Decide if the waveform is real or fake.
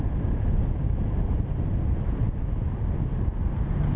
real